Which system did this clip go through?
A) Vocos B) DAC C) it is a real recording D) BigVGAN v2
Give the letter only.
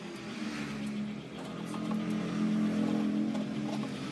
C